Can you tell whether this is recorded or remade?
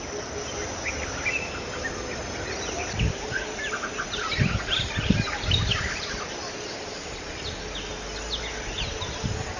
recorded